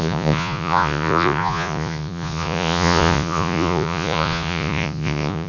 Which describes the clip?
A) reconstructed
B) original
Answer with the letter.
A